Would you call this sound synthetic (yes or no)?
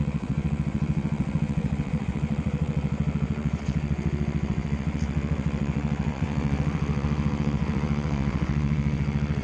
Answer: yes